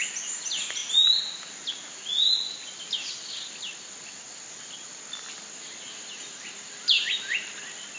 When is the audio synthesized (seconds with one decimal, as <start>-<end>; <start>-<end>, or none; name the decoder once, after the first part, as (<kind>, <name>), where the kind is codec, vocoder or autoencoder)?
none